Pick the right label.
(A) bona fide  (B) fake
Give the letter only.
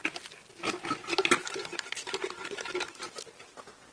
A